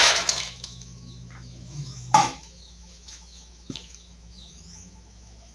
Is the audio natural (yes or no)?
no